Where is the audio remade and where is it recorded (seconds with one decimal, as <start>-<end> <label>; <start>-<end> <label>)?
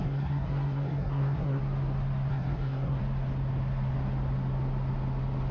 0.0-1.6 remade; 1.6-2.3 recorded; 2.3-3.0 remade; 3.0-5.5 recorded